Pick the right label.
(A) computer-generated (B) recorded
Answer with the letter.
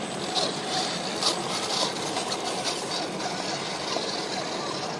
B